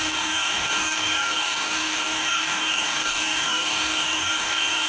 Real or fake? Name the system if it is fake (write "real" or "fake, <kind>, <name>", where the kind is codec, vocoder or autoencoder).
fake, codec, DAC